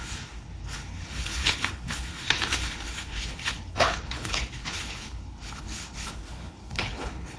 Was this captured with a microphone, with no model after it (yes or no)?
no